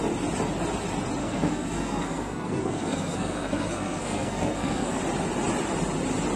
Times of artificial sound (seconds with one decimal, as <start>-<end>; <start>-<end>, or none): 1.2-5.0